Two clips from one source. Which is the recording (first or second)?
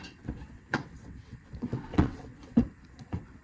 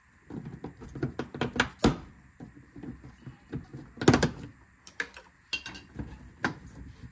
second